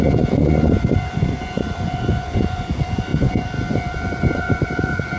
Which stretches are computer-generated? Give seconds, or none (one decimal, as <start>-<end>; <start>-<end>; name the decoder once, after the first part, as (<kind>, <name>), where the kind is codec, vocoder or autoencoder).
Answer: 0.0-5.2 (vocoder, Vocos)